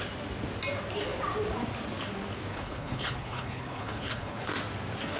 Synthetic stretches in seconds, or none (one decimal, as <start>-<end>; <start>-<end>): 2.5-4.5